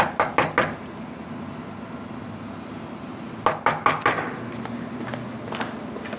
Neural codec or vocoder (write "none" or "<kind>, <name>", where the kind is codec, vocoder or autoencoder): none